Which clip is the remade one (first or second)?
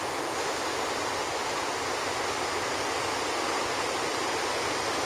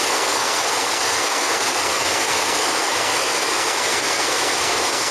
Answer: second